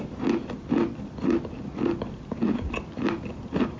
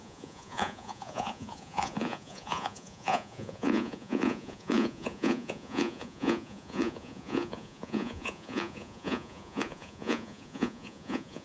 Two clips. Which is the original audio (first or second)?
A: first